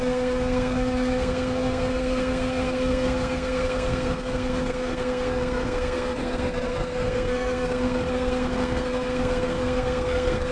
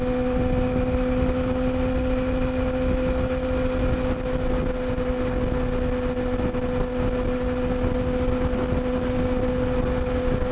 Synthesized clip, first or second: first